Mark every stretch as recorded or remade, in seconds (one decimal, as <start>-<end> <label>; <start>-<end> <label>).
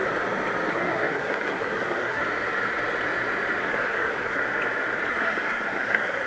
0.0-0.7 recorded; 0.7-2.2 remade; 2.2-3.6 recorded; 3.6-4.4 remade; 4.4-5.1 recorded; 5.1-6.3 remade